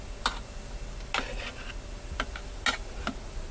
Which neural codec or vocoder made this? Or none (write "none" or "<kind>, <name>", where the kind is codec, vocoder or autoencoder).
none